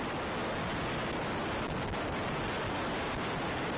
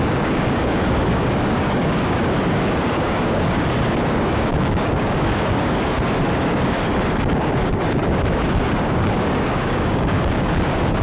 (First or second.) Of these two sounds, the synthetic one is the second